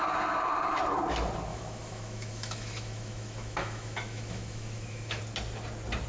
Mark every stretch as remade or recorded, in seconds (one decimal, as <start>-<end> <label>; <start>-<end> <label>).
0.0-1.5 recorded; 1.5-5.2 remade; 5.2-6.1 recorded